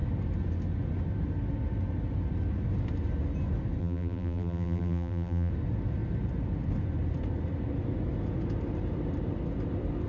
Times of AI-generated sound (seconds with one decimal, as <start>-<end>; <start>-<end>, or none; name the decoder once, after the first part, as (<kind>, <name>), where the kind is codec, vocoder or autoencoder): 3.8-5.5 (vocoder, BigVGAN v2)